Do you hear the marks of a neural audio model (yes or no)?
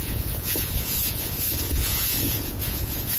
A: yes